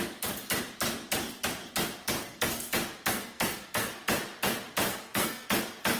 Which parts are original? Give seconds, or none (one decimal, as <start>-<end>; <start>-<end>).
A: 0.0-2.2; 2.7-3.1; 3.9-4.9; 5.5-6.0